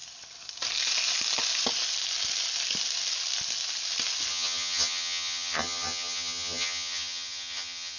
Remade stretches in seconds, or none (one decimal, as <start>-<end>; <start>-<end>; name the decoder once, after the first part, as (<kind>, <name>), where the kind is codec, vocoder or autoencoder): 4.3-8.0 (vocoder, HiFi-GAN)